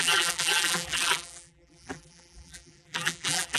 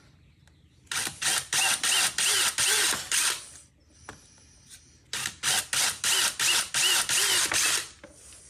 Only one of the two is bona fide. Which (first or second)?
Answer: second